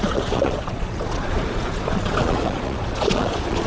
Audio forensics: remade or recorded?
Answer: remade